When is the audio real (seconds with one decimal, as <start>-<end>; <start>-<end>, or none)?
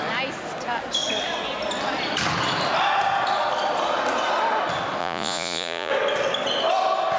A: 0.0-5.0; 5.9-7.2